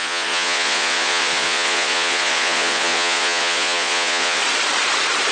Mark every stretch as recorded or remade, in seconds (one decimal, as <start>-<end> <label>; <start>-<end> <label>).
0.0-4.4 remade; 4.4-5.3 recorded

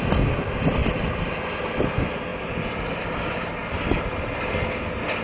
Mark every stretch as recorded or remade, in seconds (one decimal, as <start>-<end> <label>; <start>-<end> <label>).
0.0-5.2 recorded

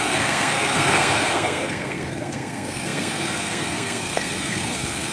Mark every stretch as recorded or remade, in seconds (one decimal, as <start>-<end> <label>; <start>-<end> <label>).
0.0-5.1 remade